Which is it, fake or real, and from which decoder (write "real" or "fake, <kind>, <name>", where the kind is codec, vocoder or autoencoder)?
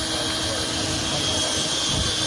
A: real